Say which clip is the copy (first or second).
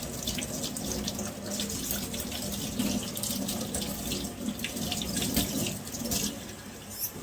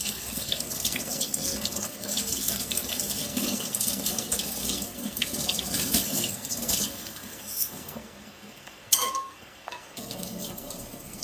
second